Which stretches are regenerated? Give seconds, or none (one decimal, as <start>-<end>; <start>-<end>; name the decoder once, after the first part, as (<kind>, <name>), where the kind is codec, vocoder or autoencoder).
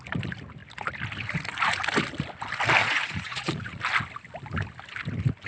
2.8-3.8 (vocoder, Vocos)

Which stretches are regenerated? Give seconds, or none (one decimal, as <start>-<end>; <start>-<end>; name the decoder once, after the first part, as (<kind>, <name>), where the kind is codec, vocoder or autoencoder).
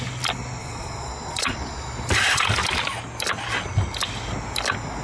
0.6-2.1 (vocoder, Vocos)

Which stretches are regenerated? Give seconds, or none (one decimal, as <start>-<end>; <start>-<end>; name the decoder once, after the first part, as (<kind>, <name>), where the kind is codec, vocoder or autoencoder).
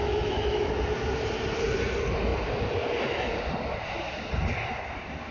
0.0-0.7 (autoencoder, DAC-VAE)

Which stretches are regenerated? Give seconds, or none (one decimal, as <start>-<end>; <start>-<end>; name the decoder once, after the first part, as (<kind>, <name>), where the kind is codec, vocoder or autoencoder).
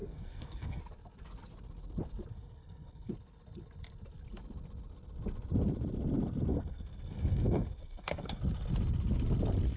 0.0-0.8 (codec, SNAC); 2.3-3.1; 6.5-8.4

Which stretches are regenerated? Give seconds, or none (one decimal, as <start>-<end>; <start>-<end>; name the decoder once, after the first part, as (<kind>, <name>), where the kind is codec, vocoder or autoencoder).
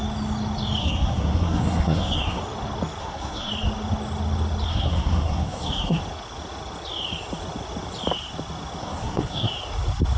0.8-2.4 (codec, SNAC); 3.0-3.5; 4.7-6.0; 8.8-9.5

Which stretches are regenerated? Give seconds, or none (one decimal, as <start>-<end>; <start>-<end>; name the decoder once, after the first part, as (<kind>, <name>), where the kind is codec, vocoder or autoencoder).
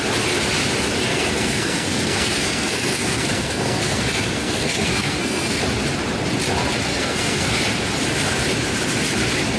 1.1-5.6 (codec, SNAC); 6.9-7.5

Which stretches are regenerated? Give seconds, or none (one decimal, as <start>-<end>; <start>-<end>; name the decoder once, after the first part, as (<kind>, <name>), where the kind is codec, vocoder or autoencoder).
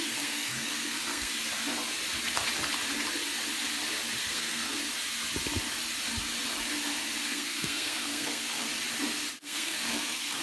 0.0-1.3 (codec, SNAC); 4.2-4.8; 7.2-8.7; 9.4-10.4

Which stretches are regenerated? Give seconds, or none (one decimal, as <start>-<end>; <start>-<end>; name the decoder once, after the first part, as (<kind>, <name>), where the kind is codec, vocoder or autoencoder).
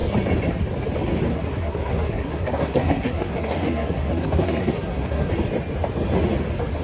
1.3-5.3 (codec, SNAC)